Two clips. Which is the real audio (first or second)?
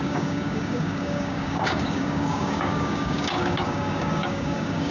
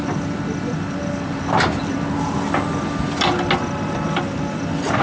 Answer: second